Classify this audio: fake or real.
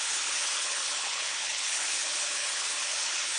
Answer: fake